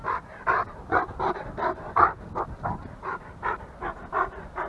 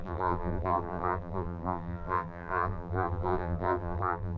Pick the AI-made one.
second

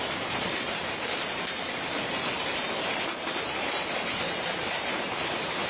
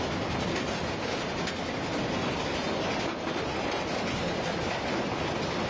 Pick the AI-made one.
first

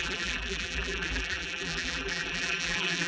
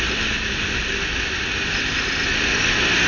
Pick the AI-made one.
first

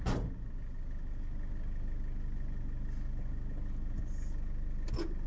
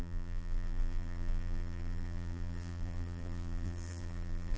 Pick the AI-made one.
second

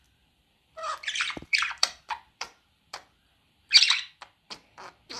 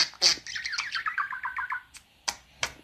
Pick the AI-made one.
first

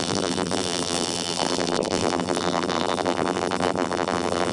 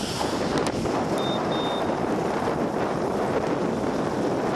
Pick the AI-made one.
first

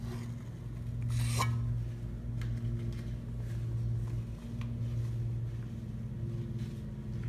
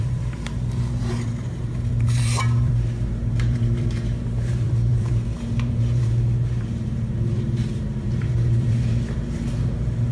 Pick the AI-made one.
second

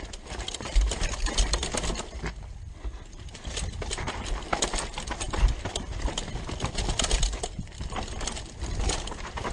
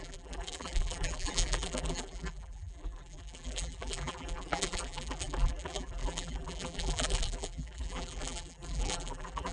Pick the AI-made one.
second